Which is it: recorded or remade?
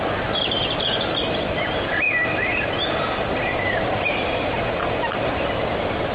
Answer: recorded